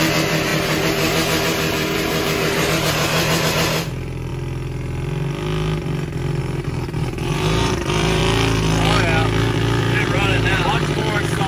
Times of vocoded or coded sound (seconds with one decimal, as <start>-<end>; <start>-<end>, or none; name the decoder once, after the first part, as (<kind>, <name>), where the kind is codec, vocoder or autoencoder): 0.0-4.3 (vocoder, BigVGAN v2); 6.4-8.2; 9.8-11.5